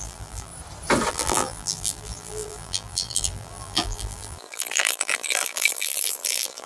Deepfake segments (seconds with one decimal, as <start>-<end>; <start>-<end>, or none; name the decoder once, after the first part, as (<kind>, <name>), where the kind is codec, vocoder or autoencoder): 0.0-0.5 (vocoder, BigVGAN v2); 1.1-6.7